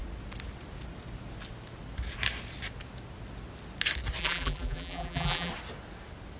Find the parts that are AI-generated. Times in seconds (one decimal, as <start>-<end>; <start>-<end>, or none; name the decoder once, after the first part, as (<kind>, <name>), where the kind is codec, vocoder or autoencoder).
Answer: 4.2-5.5 (vocoder, BigVGAN v2)